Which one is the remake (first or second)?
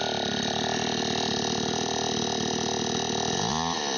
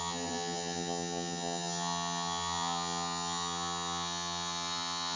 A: second